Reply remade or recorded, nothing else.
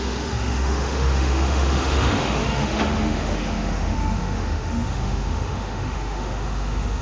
remade